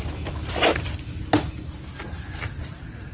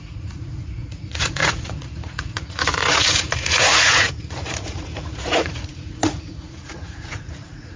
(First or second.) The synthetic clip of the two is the second